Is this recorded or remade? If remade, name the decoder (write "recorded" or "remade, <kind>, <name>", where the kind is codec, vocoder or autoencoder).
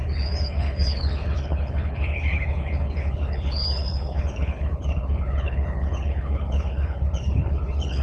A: remade, codec, HILCodec